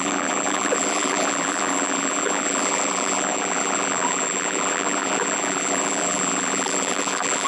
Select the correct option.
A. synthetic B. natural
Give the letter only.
A